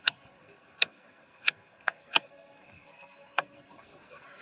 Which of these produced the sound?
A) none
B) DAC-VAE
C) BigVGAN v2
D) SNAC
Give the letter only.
D